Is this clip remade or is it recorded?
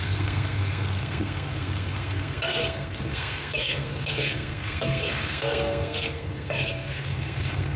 remade